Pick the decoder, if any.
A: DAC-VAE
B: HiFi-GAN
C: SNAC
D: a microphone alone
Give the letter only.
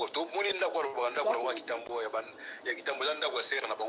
A